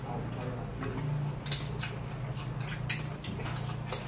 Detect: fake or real real